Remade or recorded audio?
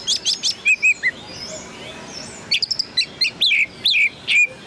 recorded